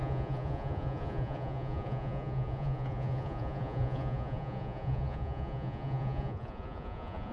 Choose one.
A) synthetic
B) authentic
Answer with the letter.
A